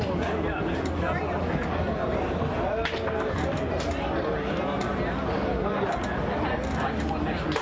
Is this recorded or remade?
recorded